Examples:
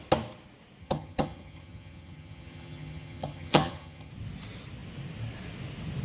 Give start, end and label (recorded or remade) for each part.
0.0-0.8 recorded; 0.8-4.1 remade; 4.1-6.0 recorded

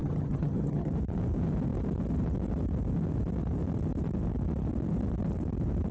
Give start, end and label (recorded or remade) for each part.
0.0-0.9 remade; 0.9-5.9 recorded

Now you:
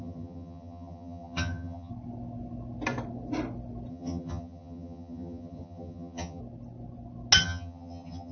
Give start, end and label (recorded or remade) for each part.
0.0-1.9 remade; 1.9-3.9 recorded; 3.9-6.4 remade; 6.4-7.4 recorded; 7.4-8.3 remade

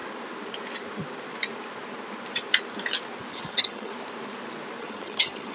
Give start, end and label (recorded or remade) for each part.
0.0-3.3 recorded; 3.3-3.9 remade; 3.9-4.8 recorded; 4.8-5.5 remade

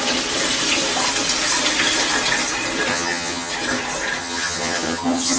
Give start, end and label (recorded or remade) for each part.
0.0-2.9 recorded; 2.9-3.5 remade; 3.5-4.2 recorded; 4.2-5.4 remade

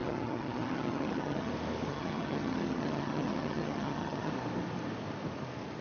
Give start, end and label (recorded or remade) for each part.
0.0-1.5 remade; 1.5-1.9 recorded; 1.9-4.3 remade; 4.3-5.8 recorded

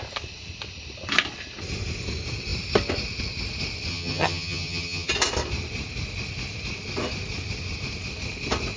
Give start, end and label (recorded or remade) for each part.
0.0-3.9 recorded; 3.9-5.1 remade; 5.1-8.8 recorded